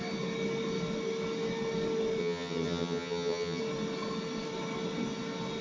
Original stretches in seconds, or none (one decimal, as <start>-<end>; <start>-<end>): 0.0-2.2; 3.6-5.6